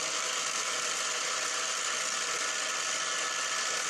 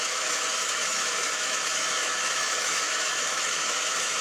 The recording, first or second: first